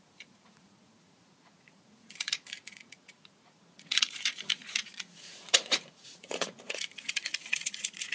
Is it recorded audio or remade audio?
remade